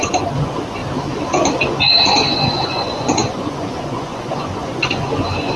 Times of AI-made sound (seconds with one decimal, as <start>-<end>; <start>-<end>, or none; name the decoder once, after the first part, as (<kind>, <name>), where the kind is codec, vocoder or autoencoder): 0.0-0.8 (vocoder, Vocos); 1.6-5.6